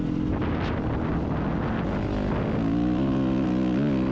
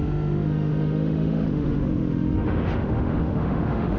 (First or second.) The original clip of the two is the first